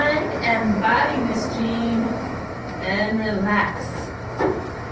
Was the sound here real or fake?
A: fake